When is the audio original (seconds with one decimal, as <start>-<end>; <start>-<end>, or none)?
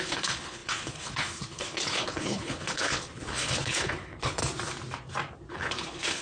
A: 4.4-5.5